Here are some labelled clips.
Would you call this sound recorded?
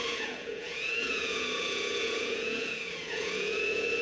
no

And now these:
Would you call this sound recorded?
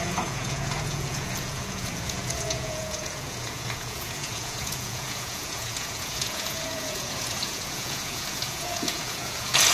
no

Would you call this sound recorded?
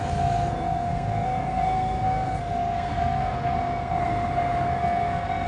no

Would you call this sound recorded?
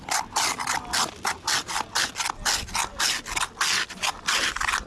yes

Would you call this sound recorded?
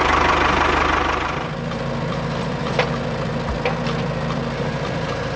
no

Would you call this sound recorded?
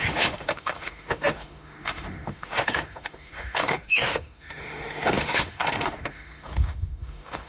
no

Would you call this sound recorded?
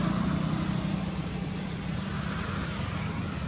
yes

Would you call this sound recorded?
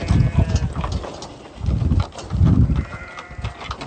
yes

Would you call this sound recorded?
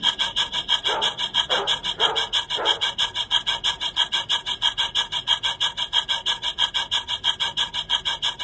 yes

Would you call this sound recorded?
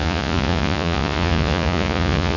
no